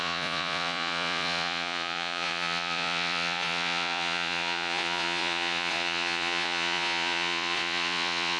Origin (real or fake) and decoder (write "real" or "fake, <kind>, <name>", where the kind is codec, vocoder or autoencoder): fake, vocoder, Vocos